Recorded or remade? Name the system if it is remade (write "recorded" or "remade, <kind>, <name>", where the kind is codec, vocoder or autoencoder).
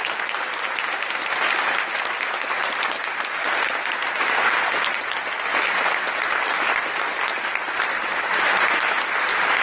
remade, vocoder, BigVGAN v2